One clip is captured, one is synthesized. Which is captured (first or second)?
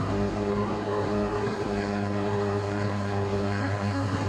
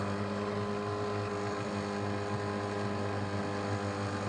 second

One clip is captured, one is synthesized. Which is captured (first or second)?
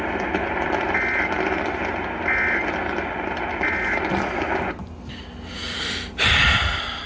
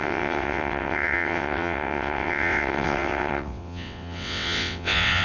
first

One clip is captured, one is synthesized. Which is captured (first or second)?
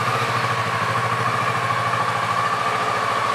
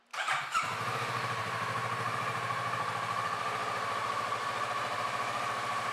first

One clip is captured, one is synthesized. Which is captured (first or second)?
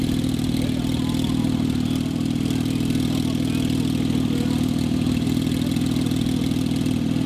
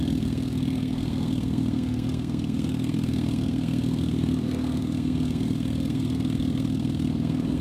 first